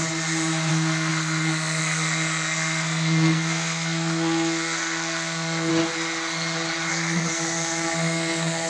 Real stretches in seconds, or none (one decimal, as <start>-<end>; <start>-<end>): 0.0-0.7; 5.7-6.9